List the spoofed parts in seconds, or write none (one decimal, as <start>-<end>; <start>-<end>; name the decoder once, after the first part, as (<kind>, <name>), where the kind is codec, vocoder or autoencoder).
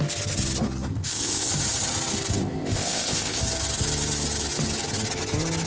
0.9-1.5 (codec, ZipCodec); 2.4-3.4